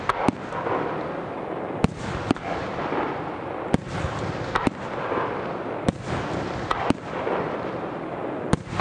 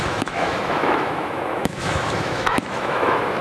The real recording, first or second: first